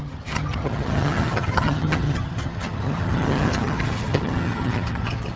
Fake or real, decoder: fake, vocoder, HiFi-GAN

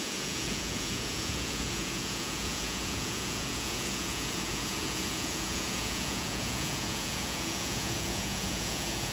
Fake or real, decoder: fake, vocoder, Vocos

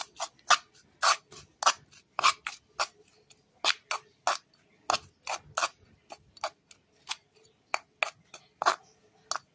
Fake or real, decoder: real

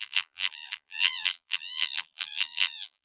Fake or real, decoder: fake, vocoder, BigVGAN v2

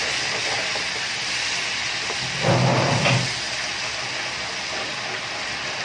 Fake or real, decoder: real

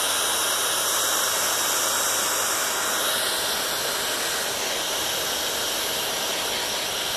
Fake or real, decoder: real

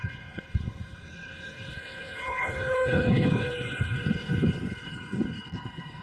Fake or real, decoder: fake, codec, HILCodec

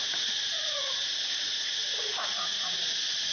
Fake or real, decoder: fake, vocoder, Vocos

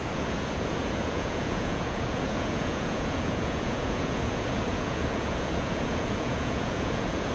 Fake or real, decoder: fake, vocoder, Vocos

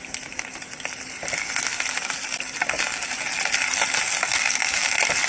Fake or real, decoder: real